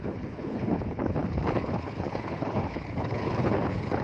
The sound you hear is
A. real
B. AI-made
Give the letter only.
B